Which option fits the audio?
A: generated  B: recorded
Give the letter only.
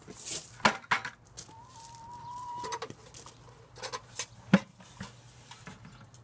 B